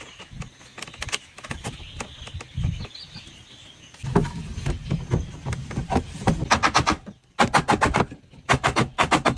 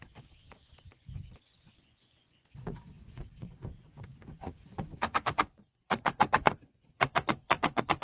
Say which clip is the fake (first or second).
second